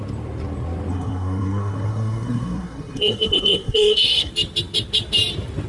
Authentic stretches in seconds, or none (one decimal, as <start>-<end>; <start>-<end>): 0.0-0.9; 4.3-5.7

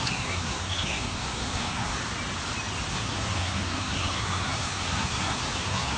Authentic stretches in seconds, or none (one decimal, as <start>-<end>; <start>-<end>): 2.0-2.9

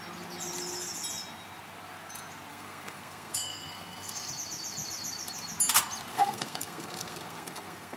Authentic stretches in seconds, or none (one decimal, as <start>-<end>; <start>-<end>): 0.0-2.5; 4.3-6.1

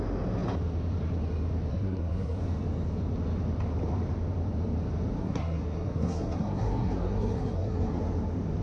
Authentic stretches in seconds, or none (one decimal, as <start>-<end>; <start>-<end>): 0.0-1.7; 2.4-5.2; 8.0-8.6

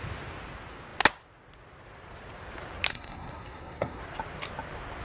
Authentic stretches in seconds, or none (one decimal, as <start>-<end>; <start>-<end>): 0.0-2.9; 4.0-5.0

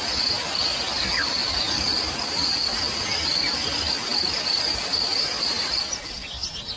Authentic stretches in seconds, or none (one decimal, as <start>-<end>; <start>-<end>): 0.0-6.8

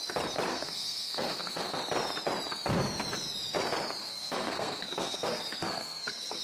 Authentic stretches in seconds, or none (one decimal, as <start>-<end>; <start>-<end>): 0.0-0.5; 1.8-4.0

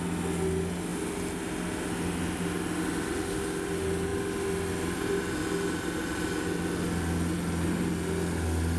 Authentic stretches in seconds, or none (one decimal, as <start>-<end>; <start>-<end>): 0.0-8.8